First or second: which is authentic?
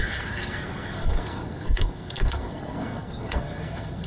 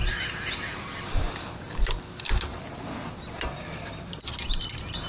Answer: second